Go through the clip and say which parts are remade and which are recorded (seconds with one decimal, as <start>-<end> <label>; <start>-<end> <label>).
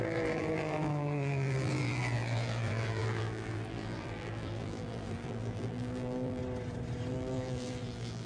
0.0-6.4 remade; 6.4-7.1 recorded; 7.1-8.3 remade